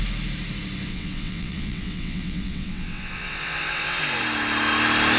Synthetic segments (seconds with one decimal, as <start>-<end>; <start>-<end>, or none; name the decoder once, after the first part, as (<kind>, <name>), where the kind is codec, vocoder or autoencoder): 0.9-4.0 (vocoder, WaveNeXt)